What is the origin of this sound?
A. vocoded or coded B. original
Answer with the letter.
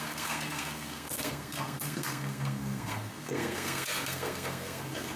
A